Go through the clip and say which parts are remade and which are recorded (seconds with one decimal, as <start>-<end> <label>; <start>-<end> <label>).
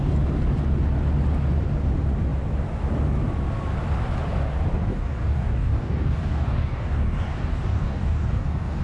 0.0-4.9 recorded; 4.9-8.8 remade